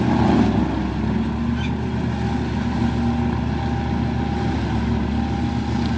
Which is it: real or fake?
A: real